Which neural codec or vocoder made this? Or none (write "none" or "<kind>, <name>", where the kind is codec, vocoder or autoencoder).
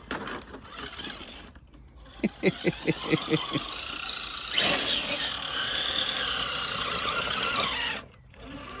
none